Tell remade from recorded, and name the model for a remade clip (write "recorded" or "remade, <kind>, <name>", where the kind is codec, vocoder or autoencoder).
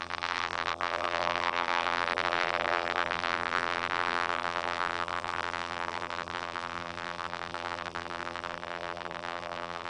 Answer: remade, vocoder, BigVGAN v2